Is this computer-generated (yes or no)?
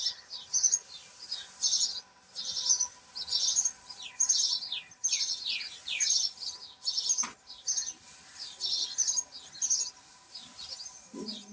no